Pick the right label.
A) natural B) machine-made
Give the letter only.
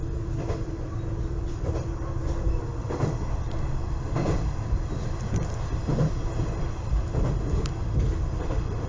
B